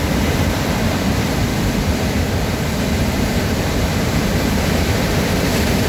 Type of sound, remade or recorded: remade